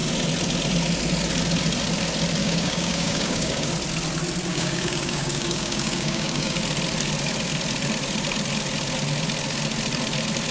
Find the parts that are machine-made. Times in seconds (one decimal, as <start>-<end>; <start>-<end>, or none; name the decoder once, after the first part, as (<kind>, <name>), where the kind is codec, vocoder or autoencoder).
2.4-3.7 (codec, DAC); 4.5-6.6